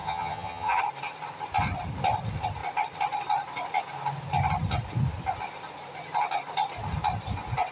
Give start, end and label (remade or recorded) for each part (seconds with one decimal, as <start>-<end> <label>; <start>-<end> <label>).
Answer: 0.0-0.8 remade; 0.8-7.7 recorded